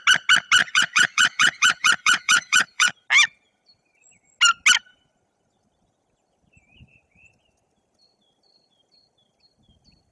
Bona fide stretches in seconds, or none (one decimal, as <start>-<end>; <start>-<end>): 0.0-0.6; 2.9-10.1